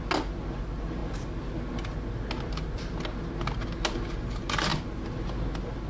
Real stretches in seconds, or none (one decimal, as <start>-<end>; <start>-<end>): 0.0-5.9